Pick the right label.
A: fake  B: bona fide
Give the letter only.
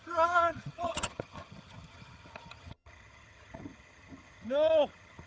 A